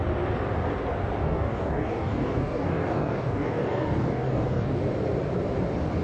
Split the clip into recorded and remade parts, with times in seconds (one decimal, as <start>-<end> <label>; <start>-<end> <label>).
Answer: 0.0-1.2 recorded; 1.2-4.8 remade; 4.8-6.0 recorded